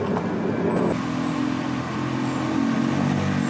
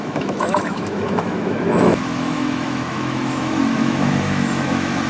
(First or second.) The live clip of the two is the first